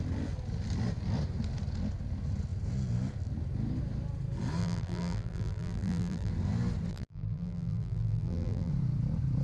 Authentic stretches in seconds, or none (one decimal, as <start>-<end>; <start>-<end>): 0.0-4.6; 6.3-6.9; 8.7-9.4